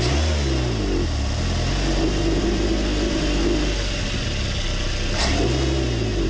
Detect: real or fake real